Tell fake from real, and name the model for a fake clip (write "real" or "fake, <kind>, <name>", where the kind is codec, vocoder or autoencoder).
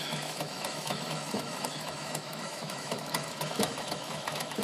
fake, autoencoder, DAC-VAE